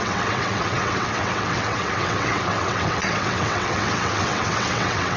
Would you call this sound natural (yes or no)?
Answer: no